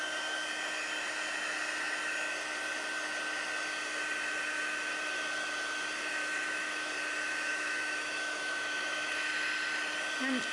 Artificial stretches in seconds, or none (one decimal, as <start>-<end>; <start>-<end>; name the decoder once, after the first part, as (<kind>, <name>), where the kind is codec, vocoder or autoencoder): 6.2-6.9 (autoencoder, DAC-VAE); 7.5-9.3